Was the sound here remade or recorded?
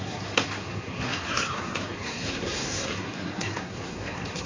remade